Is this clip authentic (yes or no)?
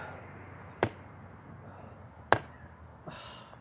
yes